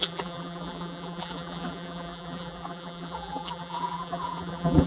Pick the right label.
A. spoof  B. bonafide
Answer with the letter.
A